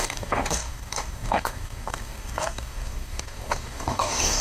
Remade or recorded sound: remade